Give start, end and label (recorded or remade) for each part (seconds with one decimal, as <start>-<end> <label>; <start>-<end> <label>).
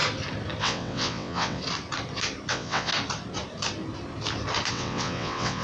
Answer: 0.0-0.6 recorded; 0.6-1.6 remade; 1.6-2.5 recorded; 2.5-2.9 remade; 2.9-4.7 recorded; 4.7-5.6 remade